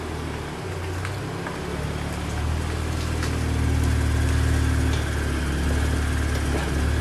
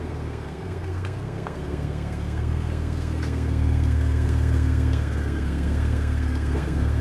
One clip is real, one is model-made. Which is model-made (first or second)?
second